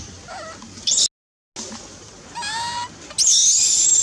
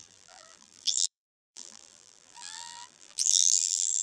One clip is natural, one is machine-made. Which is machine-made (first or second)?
second